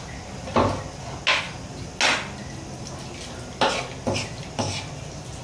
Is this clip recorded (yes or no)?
yes